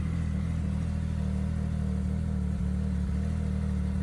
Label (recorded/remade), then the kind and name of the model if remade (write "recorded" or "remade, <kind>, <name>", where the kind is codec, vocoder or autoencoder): recorded